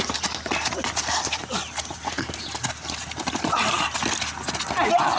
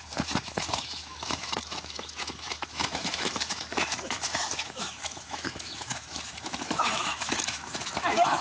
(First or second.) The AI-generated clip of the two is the second